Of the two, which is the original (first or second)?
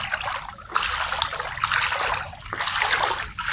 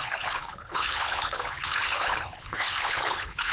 first